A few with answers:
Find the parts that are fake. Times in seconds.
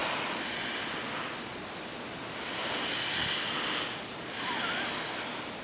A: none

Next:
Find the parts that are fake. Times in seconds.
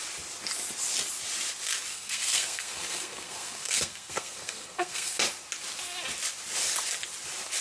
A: 1.9-5.2 (codec, SNAC)